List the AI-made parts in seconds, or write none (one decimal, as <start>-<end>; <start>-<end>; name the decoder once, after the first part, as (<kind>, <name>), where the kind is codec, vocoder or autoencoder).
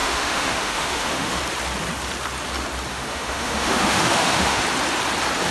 0.0-1.4 (autoencoder, DAC-VAE); 2.9-4.6